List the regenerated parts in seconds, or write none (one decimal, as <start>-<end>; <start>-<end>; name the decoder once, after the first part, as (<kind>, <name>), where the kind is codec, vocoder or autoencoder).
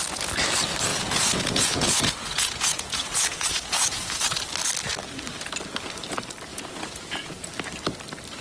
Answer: 0.9-4.4 (vocoder, Vocos); 6.5-7.5